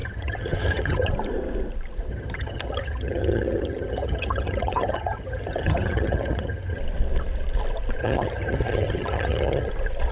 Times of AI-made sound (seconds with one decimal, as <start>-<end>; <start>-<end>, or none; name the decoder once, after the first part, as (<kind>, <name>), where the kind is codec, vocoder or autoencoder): 0.0-1.1 (vocoder, HiFi-GAN); 2.1-6.8; 8.0-9.7